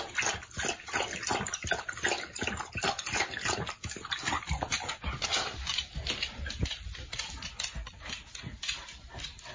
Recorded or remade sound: recorded